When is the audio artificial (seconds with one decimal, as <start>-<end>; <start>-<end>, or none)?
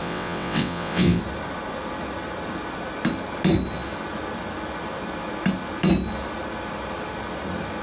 0.0-1.2